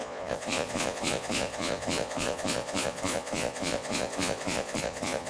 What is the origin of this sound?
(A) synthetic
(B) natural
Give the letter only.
A